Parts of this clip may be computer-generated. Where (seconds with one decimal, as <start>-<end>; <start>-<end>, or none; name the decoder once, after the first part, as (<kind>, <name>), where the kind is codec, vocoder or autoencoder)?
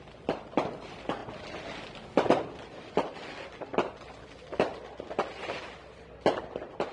none